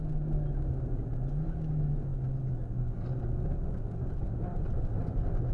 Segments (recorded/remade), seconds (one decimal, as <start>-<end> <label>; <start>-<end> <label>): 0.0-5.5 recorded